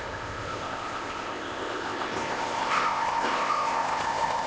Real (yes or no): no